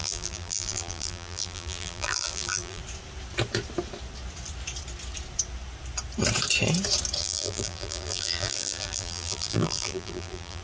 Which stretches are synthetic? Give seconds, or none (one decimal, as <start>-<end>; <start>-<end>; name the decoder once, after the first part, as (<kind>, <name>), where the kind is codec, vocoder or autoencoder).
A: 0.0-2.8 (vocoder, BigVGAN v2); 7.2-10.6